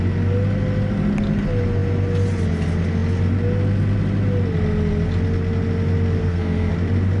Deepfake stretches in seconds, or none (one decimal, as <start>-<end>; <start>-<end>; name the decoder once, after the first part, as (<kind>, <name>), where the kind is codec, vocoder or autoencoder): 6.2-6.7 (codec, SNAC)